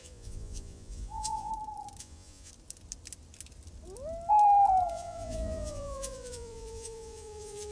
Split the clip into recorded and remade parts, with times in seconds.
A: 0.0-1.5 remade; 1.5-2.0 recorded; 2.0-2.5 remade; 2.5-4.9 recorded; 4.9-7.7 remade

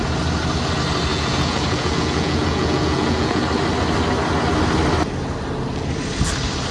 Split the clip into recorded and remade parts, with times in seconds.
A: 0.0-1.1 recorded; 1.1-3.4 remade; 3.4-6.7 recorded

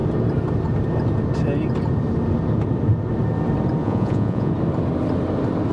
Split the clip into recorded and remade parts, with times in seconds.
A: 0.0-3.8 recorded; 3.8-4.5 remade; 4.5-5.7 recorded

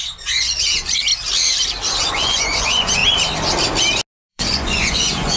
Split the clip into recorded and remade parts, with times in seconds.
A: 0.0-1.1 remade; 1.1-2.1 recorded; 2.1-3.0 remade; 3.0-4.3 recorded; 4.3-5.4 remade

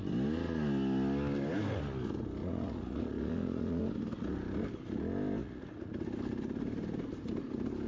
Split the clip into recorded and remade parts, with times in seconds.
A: 0.0-2.4 recorded; 2.4-3.8 remade; 3.8-5.4 recorded; 5.4-5.9 remade; 5.9-7.9 recorded